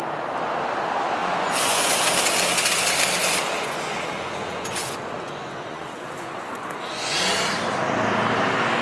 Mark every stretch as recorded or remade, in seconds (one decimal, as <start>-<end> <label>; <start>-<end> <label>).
0.0-1.2 recorded; 1.2-2.0 remade; 2.0-3.2 recorded; 3.2-7.3 remade; 7.3-8.8 recorded